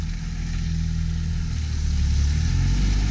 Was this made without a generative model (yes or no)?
yes